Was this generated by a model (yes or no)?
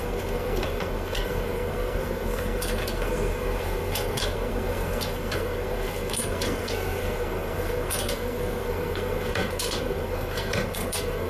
yes